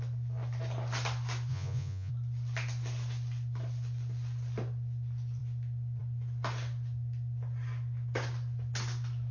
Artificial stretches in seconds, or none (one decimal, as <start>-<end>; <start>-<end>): 1.5-2.1